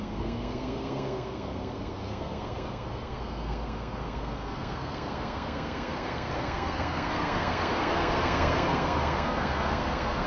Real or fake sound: fake